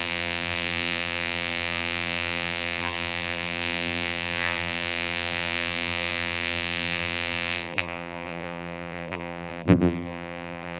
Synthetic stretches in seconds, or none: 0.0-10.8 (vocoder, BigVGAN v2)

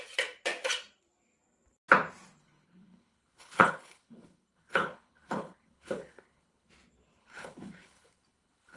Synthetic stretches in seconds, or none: 2.4-6.7 (codec, HILCodec); 7.2-8.8

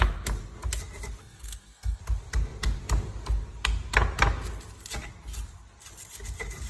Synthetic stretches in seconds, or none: 1.2-2.0 (codec, SNAC)

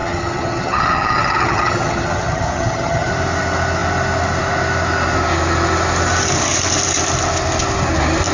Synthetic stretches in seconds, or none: 0.0-3.1 (vocoder, HiFi-GAN)

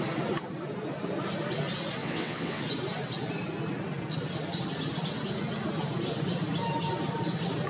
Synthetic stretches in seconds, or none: 2.0-2.6 (vocoder, WaveNeXt)

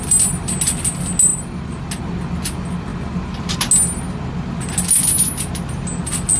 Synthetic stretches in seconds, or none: none